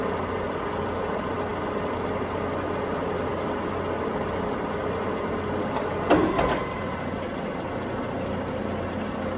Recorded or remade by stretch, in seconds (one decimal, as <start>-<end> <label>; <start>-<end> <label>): 0.0-9.4 recorded